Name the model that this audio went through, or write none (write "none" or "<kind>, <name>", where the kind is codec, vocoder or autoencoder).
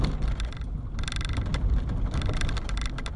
none